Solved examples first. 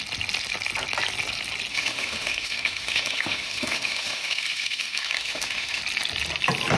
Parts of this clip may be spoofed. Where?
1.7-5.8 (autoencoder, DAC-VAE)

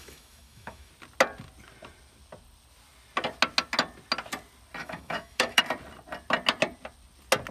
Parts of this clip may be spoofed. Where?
0.0-0.9 (autoencoder, DAC-VAE); 4.8-5.6

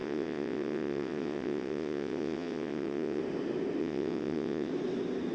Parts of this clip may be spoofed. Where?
0.0-3.2 (vocoder, WaveNeXt); 3.8-4.7

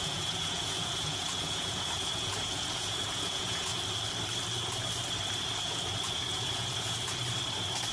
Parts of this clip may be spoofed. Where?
0.0-3.7 (vocoder, Vocos); 5.6-7.2